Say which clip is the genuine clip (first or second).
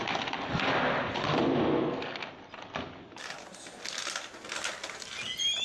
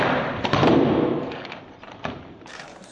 first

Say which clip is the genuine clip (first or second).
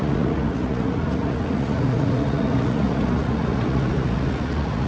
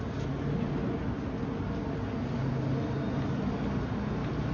second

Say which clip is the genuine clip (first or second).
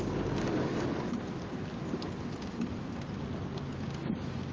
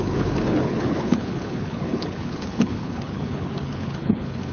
first